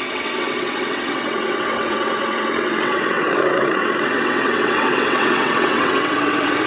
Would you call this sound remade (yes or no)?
yes